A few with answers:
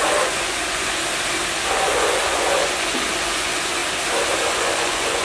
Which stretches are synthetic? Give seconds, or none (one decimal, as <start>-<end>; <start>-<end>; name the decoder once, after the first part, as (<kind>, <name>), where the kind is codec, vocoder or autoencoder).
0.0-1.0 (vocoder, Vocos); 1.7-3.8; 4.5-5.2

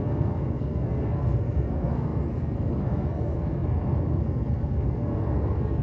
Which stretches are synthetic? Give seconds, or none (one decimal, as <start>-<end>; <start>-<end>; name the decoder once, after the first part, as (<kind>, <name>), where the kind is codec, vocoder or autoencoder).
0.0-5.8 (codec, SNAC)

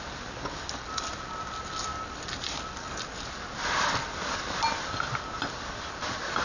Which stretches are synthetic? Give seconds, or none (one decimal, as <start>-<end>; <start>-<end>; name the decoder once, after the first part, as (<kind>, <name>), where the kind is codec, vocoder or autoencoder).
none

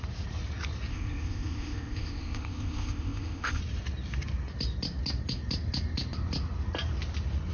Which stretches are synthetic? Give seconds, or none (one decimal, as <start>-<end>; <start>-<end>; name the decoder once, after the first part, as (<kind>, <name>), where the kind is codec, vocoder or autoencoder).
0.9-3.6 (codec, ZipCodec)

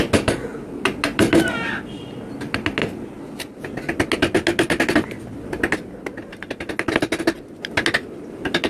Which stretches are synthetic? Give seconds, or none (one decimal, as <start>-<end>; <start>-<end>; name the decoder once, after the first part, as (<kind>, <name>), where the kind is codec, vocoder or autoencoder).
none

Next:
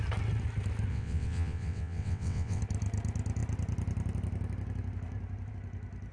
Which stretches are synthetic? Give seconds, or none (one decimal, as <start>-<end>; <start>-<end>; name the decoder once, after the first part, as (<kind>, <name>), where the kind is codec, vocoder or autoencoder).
0.9-2.6 (vocoder, WaveNeXt)

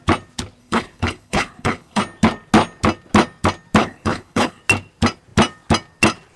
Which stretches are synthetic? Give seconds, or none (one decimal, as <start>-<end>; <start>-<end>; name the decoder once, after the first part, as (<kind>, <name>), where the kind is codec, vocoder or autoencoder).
0.6-2.0 (codec, HILCodec); 3.8-4.6

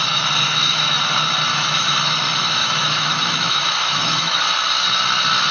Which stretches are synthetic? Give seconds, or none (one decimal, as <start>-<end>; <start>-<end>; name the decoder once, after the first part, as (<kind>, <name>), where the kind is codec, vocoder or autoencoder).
0.4-1.0 (autoencoder, DAC-VAE); 1.5-2.0; 2.6-4.4